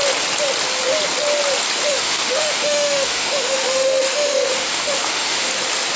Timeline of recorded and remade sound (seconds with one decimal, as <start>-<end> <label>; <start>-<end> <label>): 0.0-1.9 recorded; 1.9-5.5 remade; 5.5-6.0 recorded